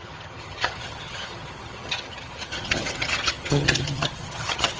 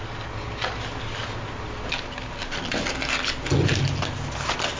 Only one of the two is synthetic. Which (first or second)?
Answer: first